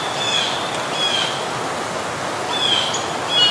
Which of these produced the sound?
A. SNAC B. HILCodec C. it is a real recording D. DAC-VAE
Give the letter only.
C